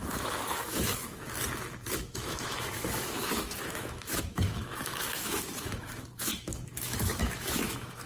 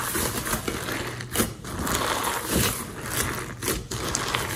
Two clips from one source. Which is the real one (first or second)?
second